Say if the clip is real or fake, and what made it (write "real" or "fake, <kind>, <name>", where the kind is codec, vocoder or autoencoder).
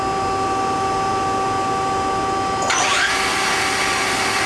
real